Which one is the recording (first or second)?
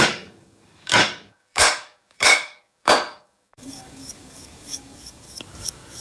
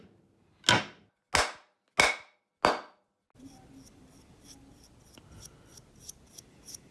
second